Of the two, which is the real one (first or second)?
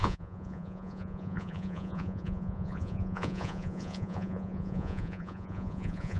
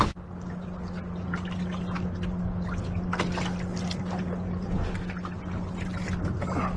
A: second